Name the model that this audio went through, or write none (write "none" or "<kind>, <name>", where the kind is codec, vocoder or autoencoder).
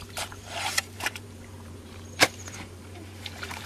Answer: vocoder, BigVGAN v2